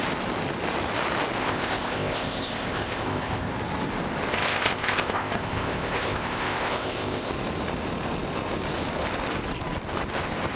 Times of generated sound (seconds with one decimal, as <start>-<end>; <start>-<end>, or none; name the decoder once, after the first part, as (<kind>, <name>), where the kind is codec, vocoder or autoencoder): 1.4-3.5 (codec, ZipCodec); 4.3-7.3